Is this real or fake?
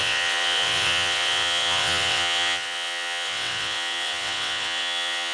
fake